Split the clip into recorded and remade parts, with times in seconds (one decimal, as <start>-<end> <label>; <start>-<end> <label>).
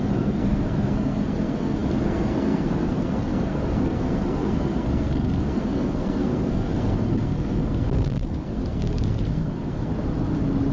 0.0-9.9 remade; 9.9-10.7 recorded